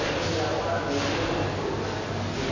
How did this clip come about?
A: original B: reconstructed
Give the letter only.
A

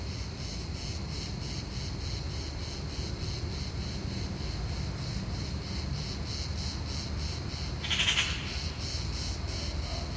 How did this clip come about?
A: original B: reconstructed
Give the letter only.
A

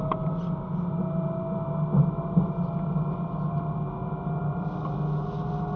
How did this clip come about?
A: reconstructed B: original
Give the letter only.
B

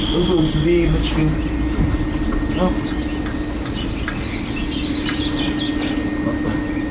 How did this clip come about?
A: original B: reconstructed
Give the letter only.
A